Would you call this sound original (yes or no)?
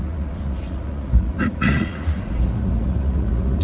no